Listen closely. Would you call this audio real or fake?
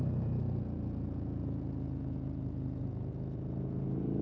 fake